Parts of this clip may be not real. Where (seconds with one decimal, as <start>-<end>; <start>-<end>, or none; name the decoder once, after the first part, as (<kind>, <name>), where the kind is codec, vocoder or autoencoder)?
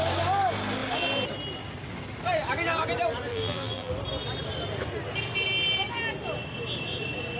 3.3-3.9 (vocoder, BigVGAN v2)